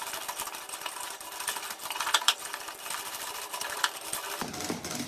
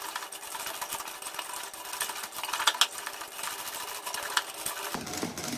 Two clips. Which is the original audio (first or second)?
second